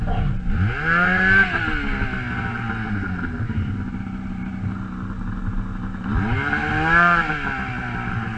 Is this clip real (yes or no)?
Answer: yes